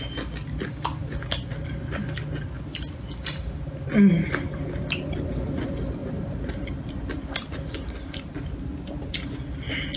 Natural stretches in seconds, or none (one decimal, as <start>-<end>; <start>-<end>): 0.0-6.0; 6.8-10.0